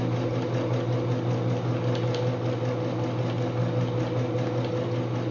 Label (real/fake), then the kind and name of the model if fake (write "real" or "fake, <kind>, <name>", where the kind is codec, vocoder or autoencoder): real